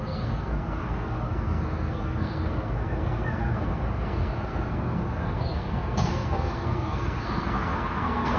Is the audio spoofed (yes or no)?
yes